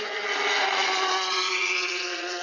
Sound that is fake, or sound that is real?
fake